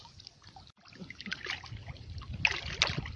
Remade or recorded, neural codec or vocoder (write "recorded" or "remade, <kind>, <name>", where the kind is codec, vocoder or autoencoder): recorded